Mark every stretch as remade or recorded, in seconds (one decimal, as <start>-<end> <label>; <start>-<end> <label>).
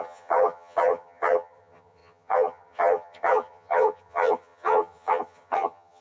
0.0-6.0 remade